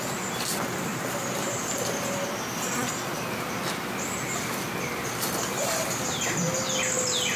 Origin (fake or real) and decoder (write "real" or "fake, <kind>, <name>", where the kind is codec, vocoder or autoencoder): real